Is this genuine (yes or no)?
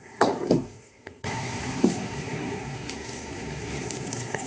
no